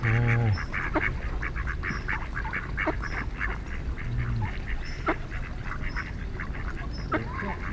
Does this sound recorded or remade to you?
recorded